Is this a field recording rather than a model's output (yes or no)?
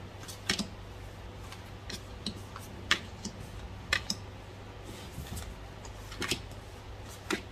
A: yes